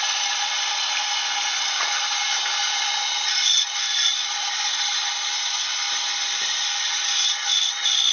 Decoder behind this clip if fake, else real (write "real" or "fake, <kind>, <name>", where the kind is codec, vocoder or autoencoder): real